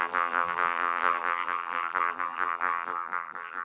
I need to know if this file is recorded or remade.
remade